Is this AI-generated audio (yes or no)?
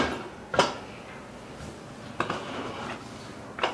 no